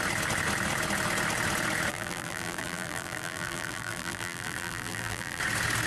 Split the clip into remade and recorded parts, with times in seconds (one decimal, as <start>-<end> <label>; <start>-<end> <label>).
0.0-1.9 recorded; 1.9-5.4 remade; 5.4-5.9 recorded